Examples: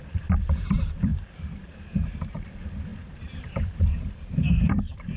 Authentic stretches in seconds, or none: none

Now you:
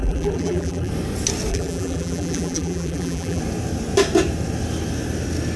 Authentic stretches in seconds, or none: 0.9-1.5; 3.4-5.6